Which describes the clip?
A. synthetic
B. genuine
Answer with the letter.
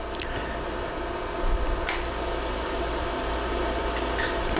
B